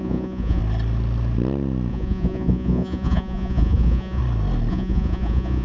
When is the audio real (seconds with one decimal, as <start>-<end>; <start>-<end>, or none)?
0.6-1.9; 4.2-4.7

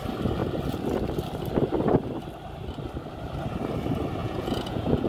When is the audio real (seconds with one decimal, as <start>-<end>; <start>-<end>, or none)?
0.0-4.2

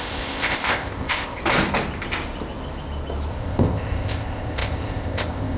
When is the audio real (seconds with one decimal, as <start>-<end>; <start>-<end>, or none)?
1.4-3.3

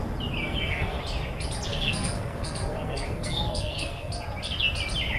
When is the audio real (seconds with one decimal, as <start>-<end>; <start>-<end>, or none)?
0.0-0.4; 1.0-1.7; 4.1-5.2

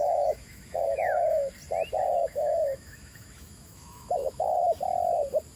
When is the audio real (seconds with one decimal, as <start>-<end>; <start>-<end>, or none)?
1.5-2.2; 4.4-5.6

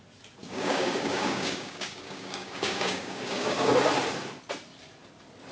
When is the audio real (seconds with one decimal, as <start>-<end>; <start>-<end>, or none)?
0.0-0.4; 3.7-5.5

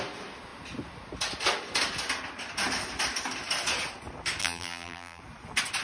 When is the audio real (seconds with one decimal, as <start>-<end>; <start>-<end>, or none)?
0.0-4.4; 5.2-5.8

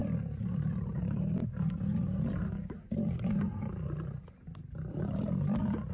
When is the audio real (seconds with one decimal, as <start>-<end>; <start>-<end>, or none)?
0.0-5.9